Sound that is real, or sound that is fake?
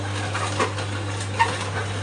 real